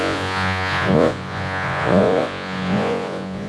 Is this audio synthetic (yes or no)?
yes